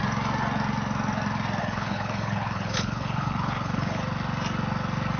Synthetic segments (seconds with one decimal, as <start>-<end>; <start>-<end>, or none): 1.6-4.0